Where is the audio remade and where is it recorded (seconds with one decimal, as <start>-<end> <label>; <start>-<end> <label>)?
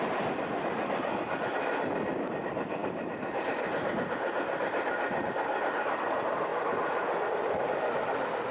0.0-8.5 recorded